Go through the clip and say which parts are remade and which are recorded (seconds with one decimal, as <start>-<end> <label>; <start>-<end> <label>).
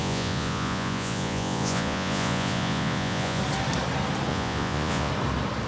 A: 0.0-3.4 remade; 3.4-4.3 recorded; 4.3-5.1 remade; 5.1-5.7 recorded